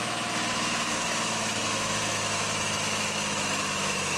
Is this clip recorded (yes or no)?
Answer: no